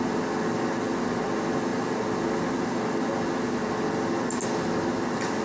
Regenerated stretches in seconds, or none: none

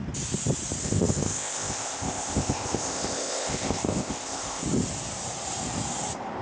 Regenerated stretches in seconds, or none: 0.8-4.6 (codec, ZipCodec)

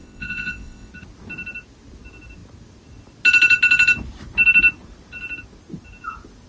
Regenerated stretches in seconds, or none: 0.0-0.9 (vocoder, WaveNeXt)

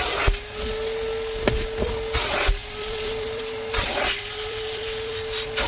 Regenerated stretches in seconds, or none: 2.6-5.1 (vocoder, BigVGAN v2)

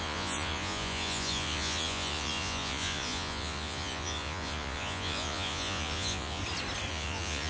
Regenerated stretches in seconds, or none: 0.0-6.4 (vocoder, Vocos); 6.9-7.5

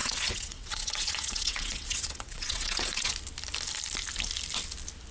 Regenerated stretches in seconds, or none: 0.0-3.1 (vocoder, WaveNeXt)

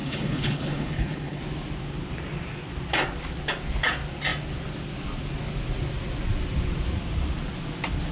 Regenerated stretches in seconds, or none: 0.0-1.4 (codec, HILCodec)

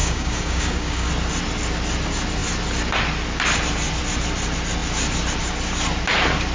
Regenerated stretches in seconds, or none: 0.0-1.1 (codec, DAC)